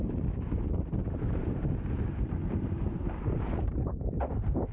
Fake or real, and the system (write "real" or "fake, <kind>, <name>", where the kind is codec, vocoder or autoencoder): fake, vocoder, BigVGAN v2